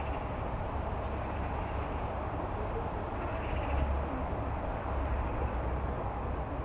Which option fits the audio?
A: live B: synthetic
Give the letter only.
A